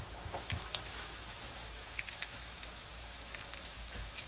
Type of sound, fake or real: fake